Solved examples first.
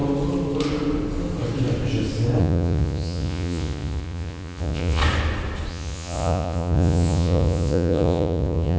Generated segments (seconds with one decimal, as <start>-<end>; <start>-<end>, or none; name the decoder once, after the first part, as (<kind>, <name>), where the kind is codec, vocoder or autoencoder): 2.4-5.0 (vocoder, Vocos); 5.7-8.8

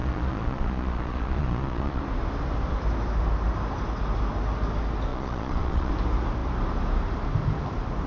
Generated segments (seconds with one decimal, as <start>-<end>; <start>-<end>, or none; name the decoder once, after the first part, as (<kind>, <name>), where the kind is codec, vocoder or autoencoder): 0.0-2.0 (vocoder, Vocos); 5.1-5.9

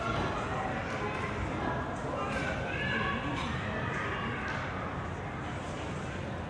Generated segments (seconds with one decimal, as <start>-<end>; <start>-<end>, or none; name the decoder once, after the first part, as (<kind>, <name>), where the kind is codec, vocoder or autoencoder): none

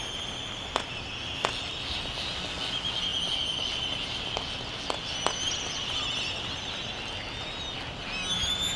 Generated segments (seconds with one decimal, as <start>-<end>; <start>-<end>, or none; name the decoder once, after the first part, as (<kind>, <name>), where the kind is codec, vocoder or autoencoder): none